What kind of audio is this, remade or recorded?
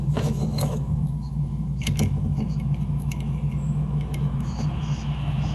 remade